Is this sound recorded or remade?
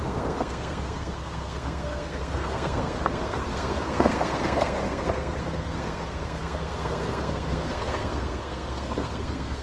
remade